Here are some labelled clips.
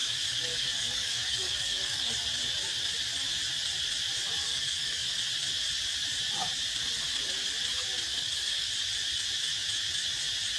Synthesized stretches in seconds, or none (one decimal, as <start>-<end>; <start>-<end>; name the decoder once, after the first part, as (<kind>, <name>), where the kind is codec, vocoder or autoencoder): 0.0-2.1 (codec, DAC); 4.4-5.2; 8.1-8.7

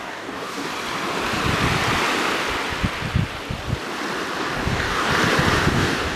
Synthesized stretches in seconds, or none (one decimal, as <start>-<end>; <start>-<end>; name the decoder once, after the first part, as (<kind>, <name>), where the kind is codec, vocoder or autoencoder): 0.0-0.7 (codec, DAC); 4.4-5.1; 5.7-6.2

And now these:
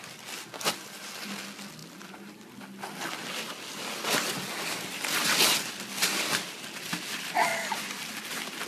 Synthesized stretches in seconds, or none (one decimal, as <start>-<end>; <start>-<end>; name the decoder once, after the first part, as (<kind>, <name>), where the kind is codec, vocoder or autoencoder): none